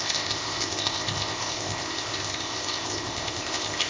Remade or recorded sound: remade